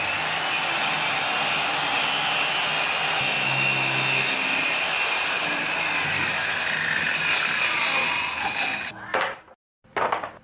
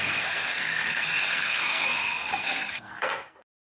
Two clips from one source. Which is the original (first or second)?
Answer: first